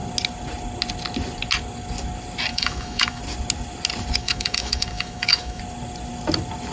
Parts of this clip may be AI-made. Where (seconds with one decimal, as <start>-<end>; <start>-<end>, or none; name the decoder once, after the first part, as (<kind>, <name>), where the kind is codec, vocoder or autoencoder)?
2.5-3.2 (autoencoder, DAC-VAE); 4.2-5.6

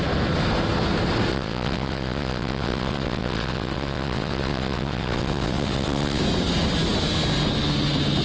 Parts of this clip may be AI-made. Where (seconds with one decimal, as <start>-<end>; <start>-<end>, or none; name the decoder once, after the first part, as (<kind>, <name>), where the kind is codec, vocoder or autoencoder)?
1.3-6.2 (vocoder, WaveNeXt)

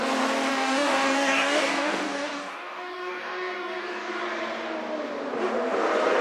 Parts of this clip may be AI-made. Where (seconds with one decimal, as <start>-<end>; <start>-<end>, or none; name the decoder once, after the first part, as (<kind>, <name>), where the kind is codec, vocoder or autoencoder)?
0.5-4.2 (codec, DAC)

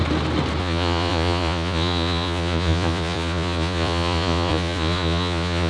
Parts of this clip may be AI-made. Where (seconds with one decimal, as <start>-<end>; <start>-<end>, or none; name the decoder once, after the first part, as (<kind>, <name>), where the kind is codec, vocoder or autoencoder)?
0.6-5.7 (vocoder, Vocos)

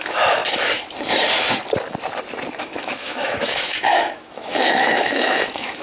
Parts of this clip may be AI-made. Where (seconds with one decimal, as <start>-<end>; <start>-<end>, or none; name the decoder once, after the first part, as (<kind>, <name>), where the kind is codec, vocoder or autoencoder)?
0.0-0.4 (autoencoder, DAC-VAE); 2.6-5.8